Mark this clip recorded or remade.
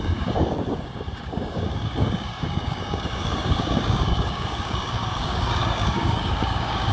remade